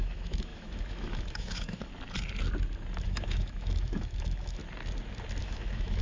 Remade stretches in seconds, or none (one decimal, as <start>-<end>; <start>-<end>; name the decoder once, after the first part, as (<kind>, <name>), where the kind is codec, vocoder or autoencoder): 0.0-1.9 (autoencoder, DAC-VAE); 3.0-4.6; 5.4-6.0